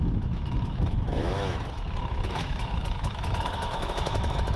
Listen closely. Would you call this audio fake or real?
fake